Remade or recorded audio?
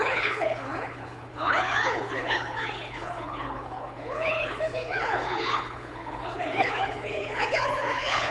remade